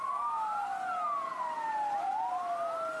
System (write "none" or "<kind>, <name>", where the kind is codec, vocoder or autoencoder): none